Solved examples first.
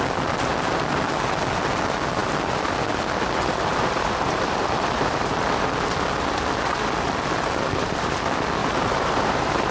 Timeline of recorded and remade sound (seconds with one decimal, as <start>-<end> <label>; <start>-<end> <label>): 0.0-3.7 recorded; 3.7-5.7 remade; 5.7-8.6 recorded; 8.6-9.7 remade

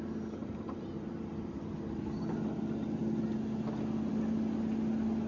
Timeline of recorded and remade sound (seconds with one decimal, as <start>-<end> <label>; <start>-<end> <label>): 0.0-0.4 recorded; 0.4-1.6 remade; 1.6-5.3 recorded

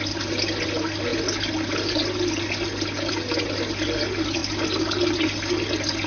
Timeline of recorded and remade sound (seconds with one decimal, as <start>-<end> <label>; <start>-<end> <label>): 0.0-4.4 recorded; 4.4-5.5 remade; 5.5-6.1 recorded

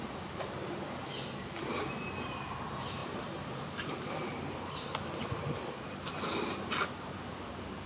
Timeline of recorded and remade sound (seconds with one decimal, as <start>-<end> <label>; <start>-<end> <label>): 0.0-7.9 recorded

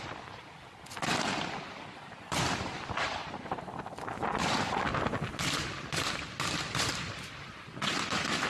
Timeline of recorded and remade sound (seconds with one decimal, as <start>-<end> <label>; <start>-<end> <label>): 0.0-3.2 recorded; 3.2-3.7 remade; 3.7-8.5 recorded

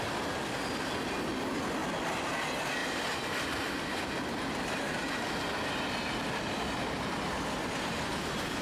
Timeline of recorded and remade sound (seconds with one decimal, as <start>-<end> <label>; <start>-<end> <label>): 0.0-1.8 recorded; 1.8-2.3 remade; 2.3-2.8 recorded; 2.8-4.0 remade; 4.0-5.0 recorded; 5.0-8.1 remade; 8.1-8.6 recorded

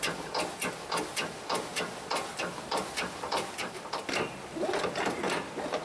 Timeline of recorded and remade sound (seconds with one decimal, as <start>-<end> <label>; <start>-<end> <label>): 0.0-1.7 recorded; 1.7-5.2 remade; 5.2-5.8 recorded

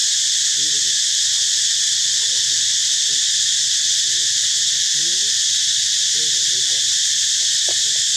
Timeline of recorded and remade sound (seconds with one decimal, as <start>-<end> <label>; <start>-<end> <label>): 0.0-2.8 recorded; 2.8-3.3 remade; 3.3-4.2 recorded; 4.2-8.2 remade